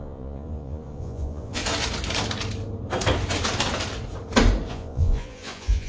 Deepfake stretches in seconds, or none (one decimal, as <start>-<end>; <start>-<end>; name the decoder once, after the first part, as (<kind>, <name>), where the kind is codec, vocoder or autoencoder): 0.0-1.6 (vocoder, Vocos); 4.7-5.9